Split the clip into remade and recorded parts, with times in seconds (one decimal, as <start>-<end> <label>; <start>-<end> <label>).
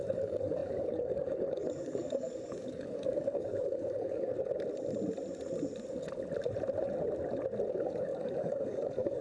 0.0-4.3 remade; 4.3-7.7 recorded; 7.7-9.2 remade